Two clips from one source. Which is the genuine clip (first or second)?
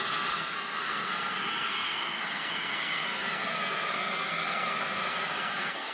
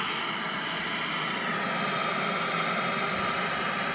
second